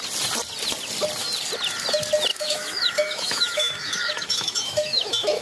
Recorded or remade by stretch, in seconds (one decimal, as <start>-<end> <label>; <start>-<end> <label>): 0.0-2.3 recorded; 2.3-5.4 remade